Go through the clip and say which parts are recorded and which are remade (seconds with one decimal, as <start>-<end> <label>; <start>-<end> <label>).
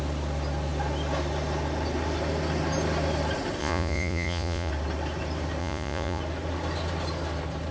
0.0-3.6 recorded; 3.6-4.7 remade; 4.7-5.6 recorded; 5.6-6.2 remade; 6.2-7.7 recorded